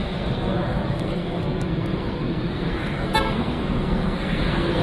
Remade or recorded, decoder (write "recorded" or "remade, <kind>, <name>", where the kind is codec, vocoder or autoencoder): remade, codec, SNAC